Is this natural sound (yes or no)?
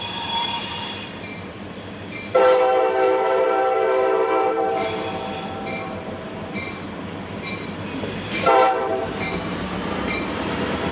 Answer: no